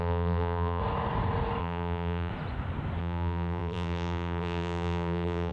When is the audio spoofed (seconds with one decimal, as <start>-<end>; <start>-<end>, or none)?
0.0-0.8; 1.6-2.3; 3.0-5.5